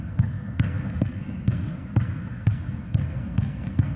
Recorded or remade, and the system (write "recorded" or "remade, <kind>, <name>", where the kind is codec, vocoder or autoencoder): remade, codec, SNAC